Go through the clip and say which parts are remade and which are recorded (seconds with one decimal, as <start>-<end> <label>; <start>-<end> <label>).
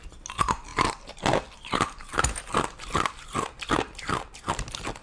0.0-5.0 recorded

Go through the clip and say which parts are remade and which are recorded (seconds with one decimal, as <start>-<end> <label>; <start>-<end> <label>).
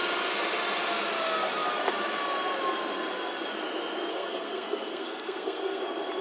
0.0-4.1 recorded; 4.1-5.8 remade; 5.8-6.2 recorded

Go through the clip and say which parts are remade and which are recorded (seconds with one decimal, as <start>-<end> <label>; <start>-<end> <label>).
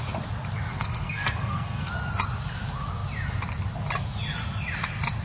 0.0-0.7 recorded; 0.7-1.9 remade; 1.9-5.2 recorded